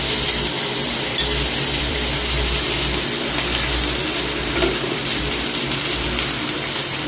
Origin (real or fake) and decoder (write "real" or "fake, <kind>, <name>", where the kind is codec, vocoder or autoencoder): fake, vocoder, BigVGAN v2